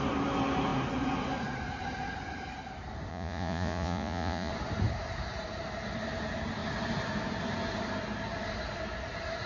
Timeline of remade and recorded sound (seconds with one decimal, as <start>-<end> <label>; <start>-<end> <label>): 0.0-3.1 recorded; 3.1-4.5 remade; 4.5-9.5 recorded